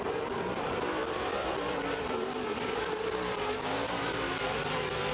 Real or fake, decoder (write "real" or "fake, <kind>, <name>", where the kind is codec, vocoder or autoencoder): fake, vocoder, BigVGAN v2